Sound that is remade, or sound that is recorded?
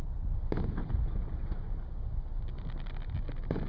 recorded